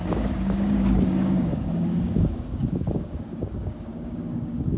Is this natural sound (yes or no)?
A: no